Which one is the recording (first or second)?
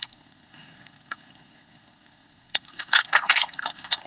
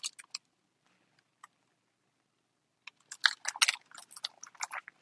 second